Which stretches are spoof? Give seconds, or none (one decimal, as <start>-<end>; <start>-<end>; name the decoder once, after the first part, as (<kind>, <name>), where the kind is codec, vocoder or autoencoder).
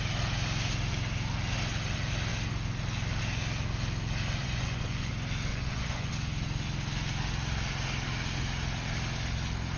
4.4-5.1 (vocoder, Vocos); 5.5-6.1